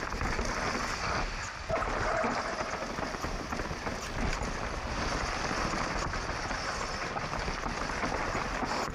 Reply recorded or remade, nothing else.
recorded